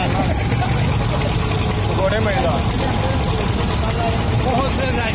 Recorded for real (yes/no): yes